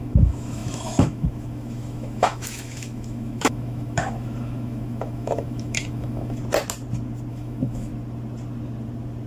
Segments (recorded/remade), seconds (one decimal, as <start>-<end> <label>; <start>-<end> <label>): 0.0-6.4 remade; 6.4-7.3 recorded; 7.3-7.9 remade; 7.9-9.3 recorded